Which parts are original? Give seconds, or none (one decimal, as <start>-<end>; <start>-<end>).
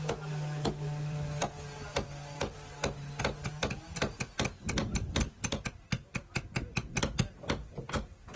0.0-8.4